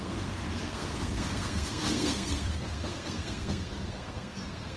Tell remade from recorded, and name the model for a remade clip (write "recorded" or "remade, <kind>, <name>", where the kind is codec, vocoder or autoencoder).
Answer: remade, codec, SNAC